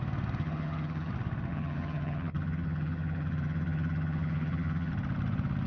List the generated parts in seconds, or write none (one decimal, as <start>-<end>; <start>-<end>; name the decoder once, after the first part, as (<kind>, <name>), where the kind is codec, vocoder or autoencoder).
0.4-1.1 (vocoder, HiFi-GAN); 1.5-4.9